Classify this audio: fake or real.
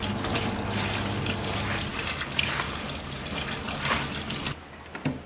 real